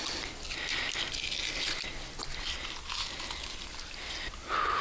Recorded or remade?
recorded